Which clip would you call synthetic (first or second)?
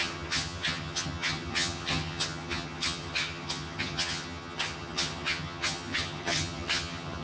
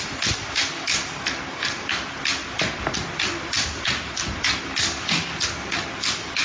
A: first